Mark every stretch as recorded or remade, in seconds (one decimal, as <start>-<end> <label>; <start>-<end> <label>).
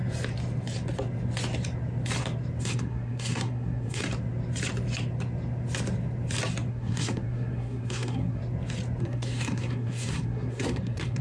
0.0-2.6 recorded; 2.6-4.0 remade; 4.0-6.7 recorded; 6.7-8.4 remade; 8.4-9.0 recorded; 9.0-11.2 remade